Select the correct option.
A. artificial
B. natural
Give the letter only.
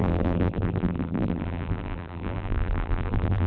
A